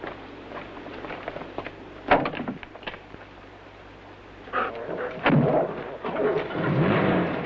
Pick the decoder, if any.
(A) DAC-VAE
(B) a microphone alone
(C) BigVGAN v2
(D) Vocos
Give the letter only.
B